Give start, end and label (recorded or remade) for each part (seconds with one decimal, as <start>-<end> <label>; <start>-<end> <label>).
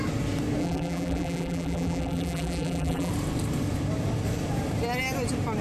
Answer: 0.0-0.6 recorded; 0.6-3.1 remade; 3.1-5.6 recorded